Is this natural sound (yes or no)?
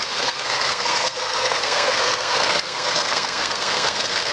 no